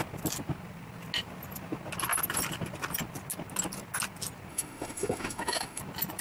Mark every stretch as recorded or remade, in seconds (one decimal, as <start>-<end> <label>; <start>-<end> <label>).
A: 0.0-4.5 recorded; 4.5-5.8 remade; 5.8-6.2 recorded